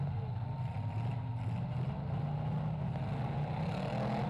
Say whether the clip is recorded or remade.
recorded